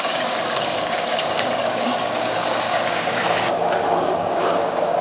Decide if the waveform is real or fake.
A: fake